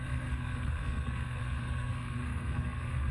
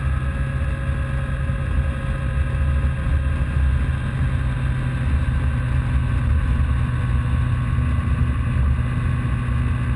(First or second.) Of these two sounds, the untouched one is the second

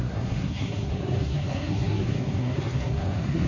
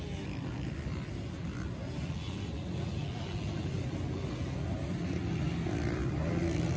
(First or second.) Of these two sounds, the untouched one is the second